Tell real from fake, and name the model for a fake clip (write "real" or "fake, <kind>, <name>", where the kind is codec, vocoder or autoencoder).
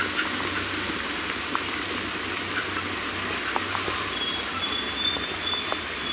real